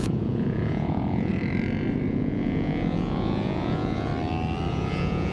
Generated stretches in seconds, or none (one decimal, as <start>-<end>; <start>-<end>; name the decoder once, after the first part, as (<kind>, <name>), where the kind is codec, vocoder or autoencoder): 0.0-1.3 (vocoder, Vocos); 2.1-4.1; 4.7-5.3